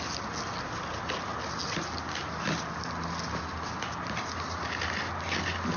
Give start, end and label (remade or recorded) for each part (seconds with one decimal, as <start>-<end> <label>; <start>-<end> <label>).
0.0-5.8 recorded